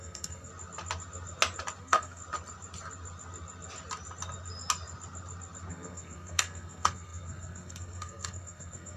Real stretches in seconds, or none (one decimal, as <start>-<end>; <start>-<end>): 0.5-1.8; 2.2-5.7